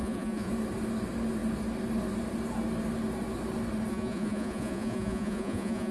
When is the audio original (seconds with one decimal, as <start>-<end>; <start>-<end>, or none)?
0.5-3.9